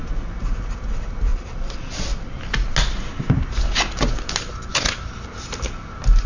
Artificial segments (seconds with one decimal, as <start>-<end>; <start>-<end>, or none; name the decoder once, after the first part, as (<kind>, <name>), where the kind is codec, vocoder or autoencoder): 1.3-2.4 (vocoder, Vocos)